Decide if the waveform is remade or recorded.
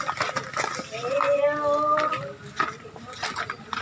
recorded